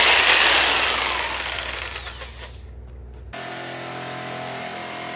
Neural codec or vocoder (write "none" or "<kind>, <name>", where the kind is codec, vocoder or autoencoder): none